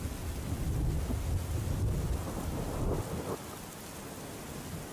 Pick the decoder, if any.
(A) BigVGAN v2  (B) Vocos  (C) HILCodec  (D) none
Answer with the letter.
D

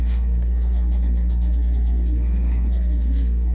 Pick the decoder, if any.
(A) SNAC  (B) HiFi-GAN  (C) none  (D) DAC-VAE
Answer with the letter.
A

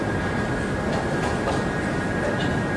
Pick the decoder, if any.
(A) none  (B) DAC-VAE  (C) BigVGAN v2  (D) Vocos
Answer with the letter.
A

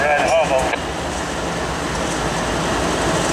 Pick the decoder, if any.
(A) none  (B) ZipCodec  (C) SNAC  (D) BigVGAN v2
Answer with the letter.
A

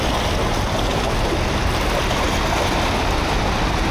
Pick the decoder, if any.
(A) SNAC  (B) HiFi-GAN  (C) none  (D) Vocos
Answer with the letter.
C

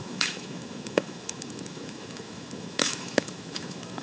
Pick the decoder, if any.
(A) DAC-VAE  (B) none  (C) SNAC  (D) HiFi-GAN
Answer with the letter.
A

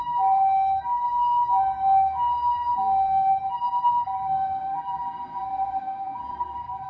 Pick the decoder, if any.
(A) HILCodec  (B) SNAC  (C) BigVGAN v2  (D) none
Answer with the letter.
B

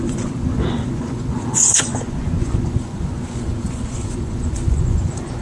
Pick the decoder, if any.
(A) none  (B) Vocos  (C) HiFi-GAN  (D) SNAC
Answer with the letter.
B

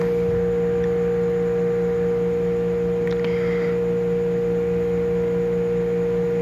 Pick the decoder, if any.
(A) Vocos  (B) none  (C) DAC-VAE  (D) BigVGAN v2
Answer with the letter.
B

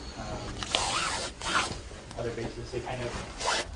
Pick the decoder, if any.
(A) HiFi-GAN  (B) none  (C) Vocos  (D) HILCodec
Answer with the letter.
C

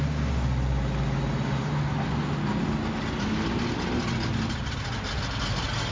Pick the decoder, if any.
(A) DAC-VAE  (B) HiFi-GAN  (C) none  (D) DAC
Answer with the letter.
C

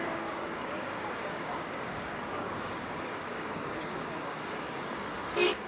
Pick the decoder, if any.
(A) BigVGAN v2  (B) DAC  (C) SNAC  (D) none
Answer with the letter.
B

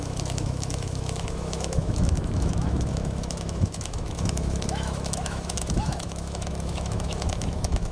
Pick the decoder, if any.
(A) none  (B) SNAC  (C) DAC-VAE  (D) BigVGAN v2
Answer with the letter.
C